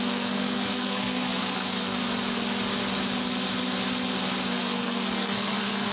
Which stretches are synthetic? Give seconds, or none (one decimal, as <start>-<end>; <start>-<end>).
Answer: 0.0-2.0; 4.5-5.9